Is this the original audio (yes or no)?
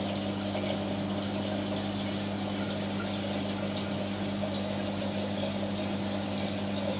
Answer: yes